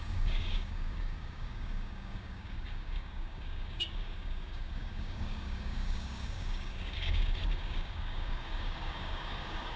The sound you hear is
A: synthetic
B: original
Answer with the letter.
A